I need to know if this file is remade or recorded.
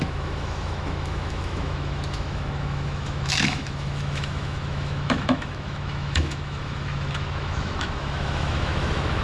remade